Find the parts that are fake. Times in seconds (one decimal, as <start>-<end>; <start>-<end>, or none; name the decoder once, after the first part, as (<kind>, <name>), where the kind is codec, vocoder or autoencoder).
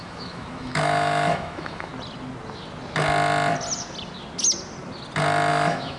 0.0-1.9 (autoencoder, DAC-VAE); 5.5-6.0